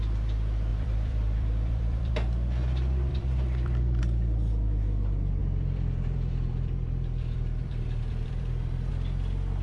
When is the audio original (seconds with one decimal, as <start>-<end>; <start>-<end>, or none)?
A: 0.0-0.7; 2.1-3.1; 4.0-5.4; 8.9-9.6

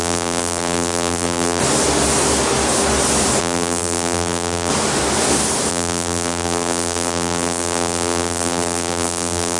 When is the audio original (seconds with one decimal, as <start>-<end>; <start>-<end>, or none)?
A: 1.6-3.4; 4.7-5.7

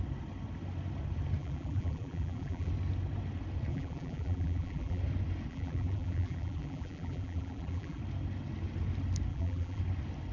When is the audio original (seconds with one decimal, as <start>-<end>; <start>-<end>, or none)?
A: 0.0-1.4; 2.7-3.7; 5.0-5.5; 8.0-9.3; 9.8-10.3